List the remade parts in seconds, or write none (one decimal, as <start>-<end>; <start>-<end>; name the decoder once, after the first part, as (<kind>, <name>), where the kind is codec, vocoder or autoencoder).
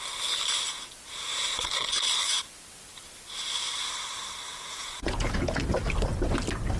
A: 4.5-5.6 (vocoder, Vocos)